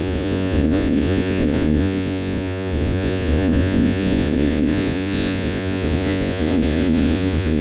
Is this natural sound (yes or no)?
no